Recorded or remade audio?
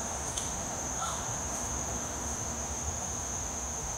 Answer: remade